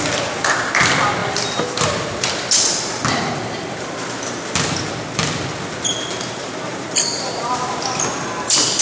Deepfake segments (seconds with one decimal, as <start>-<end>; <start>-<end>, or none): 6.7-7.7